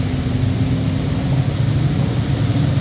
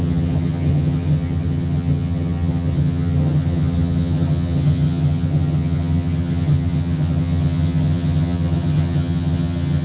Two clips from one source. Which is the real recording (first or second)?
first